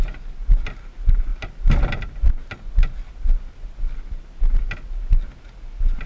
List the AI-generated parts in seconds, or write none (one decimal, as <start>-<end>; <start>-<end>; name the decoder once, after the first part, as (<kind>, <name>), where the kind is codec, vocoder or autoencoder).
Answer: none